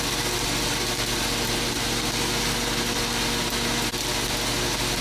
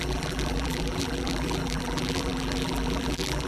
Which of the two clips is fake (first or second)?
second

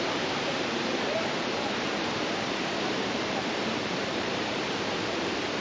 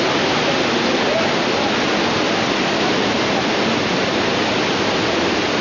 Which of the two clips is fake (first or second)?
first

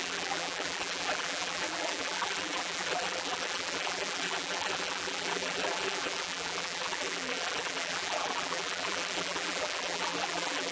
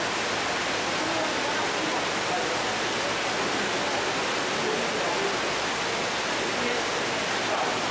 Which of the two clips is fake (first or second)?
first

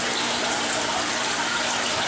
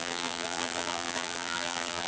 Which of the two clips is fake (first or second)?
second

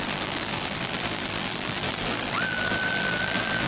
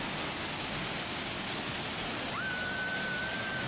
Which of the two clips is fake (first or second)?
first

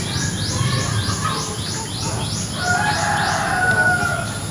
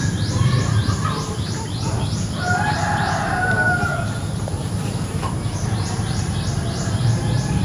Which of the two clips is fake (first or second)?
second